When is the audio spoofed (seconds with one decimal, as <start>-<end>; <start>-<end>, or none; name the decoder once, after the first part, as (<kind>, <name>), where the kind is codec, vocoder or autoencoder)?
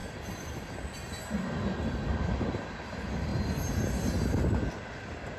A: none